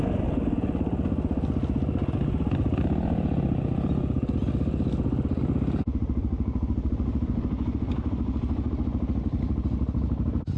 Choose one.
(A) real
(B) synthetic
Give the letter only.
A